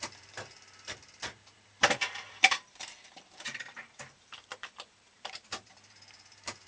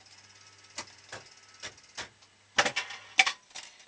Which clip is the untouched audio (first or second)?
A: second